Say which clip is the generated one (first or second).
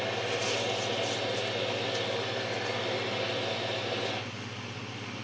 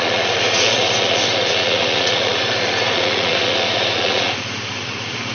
second